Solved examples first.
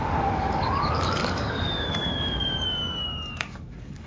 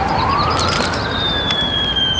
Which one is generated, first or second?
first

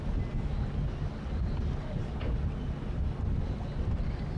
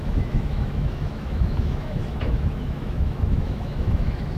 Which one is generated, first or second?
second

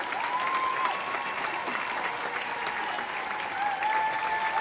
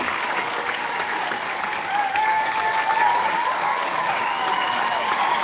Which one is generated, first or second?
second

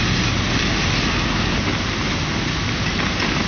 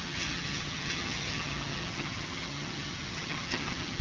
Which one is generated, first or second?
second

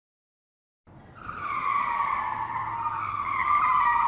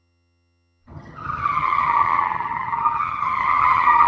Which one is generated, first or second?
second